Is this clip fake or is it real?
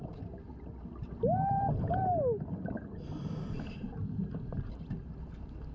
real